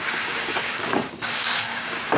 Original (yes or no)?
no